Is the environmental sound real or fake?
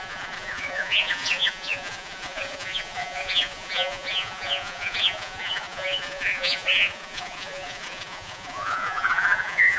fake